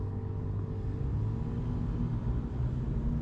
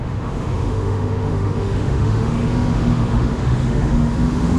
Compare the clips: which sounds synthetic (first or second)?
second